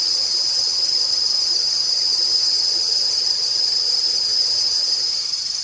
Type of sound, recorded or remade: remade